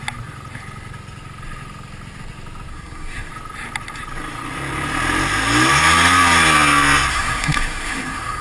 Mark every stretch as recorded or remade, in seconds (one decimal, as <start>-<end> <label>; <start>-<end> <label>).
0.0-2.7 recorded; 2.7-3.3 remade; 3.3-7.1 recorded; 7.1-8.4 remade